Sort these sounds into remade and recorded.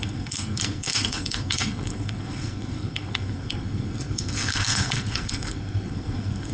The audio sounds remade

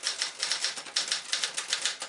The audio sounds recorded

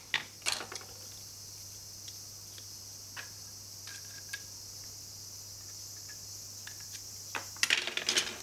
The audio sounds recorded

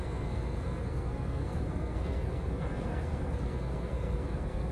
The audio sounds remade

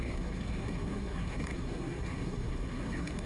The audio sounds remade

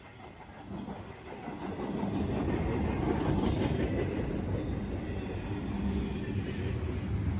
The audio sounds recorded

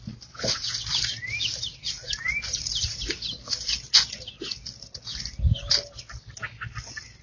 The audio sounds recorded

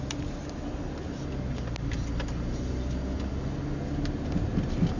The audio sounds recorded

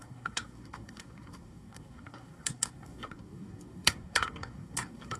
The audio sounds remade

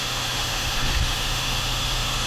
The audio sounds remade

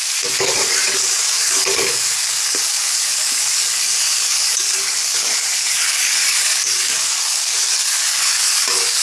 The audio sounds remade